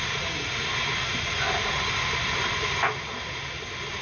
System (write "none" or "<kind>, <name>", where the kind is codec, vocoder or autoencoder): none